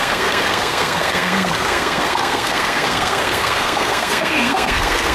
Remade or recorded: remade